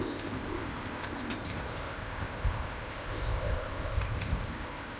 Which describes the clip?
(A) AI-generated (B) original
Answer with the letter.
A